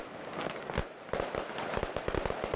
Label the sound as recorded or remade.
recorded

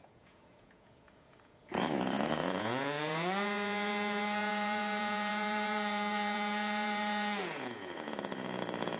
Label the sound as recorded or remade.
remade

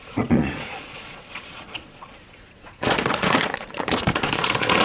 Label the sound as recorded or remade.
remade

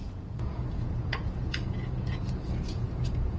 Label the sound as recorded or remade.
remade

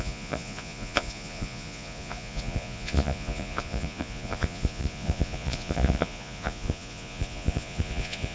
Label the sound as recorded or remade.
remade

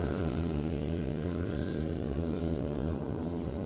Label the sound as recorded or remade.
remade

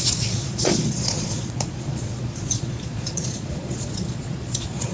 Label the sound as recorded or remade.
remade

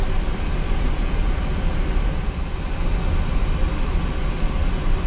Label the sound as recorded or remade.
recorded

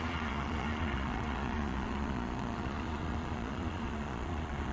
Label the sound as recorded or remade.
remade